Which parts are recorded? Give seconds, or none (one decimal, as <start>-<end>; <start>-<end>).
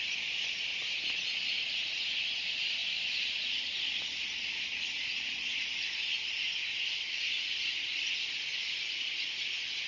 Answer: 0.0-9.9